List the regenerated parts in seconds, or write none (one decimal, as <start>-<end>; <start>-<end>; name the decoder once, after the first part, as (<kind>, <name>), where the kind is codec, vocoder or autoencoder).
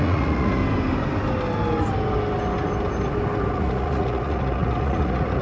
0.0-0.6 (vocoder, Vocos); 3.5-5.4